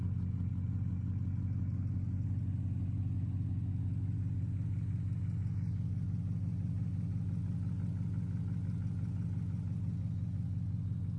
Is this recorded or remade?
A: recorded